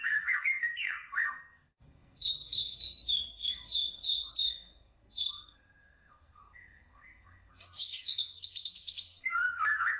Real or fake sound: fake